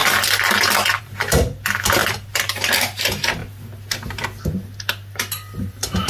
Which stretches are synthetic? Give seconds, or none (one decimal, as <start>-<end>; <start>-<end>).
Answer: 0.0-1.0; 2.0-2.8